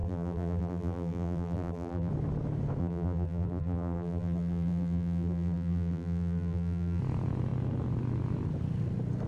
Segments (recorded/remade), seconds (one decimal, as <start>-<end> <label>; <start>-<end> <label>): 0.0-2.1 remade; 2.1-2.8 recorded; 2.8-7.0 remade; 7.0-9.3 recorded